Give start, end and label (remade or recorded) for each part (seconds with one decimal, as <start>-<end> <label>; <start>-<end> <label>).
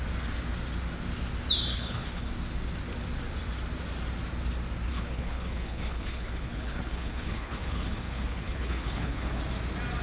0.0-1.7 recorded; 1.7-2.3 remade; 2.3-4.9 recorded; 4.9-9.4 remade; 9.4-10.0 recorded